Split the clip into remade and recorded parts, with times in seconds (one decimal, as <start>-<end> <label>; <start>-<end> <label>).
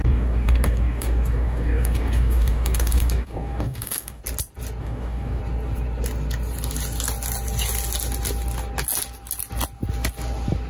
0.0-4.2 remade; 4.2-4.8 recorded; 4.8-5.4 remade; 5.4-10.7 recorded